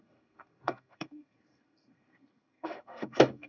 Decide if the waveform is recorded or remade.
remade